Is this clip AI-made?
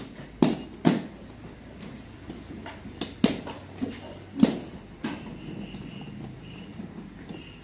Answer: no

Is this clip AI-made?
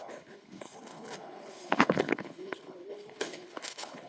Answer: yes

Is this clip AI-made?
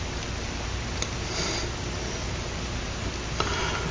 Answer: no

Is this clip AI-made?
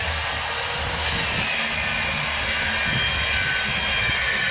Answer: no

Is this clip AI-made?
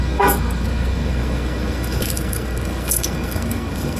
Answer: yes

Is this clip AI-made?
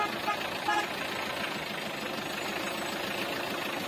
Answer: no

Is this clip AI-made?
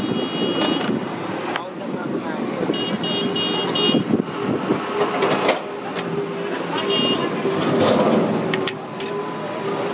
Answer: no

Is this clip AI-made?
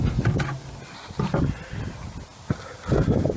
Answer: no